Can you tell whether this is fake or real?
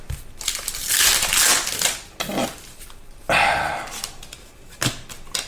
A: real